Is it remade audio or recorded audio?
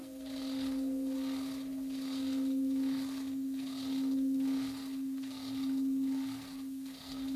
remade